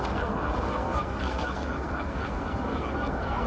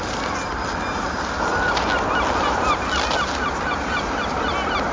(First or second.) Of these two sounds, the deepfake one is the first